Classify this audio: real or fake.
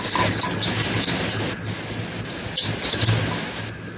real